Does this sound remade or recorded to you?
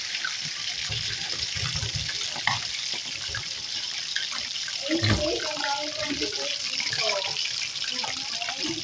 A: recorded